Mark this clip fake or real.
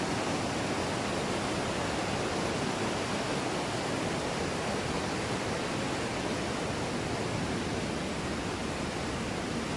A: real